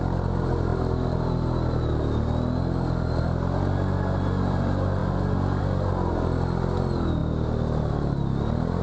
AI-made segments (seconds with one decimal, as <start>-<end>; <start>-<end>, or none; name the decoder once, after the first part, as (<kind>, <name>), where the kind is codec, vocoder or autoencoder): none